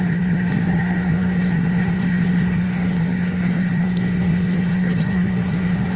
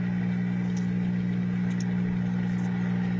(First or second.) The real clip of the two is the second